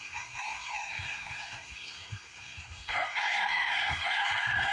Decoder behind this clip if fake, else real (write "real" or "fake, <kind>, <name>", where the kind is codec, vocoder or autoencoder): fake, codec, SNAC